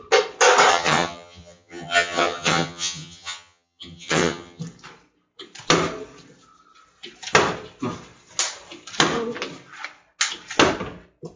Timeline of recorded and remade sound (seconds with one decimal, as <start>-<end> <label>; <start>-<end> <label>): 0.0-0.7 recorded; 0.7-4.6 remade; 4.6-11.4 recorded